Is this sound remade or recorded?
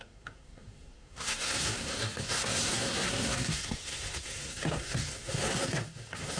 remade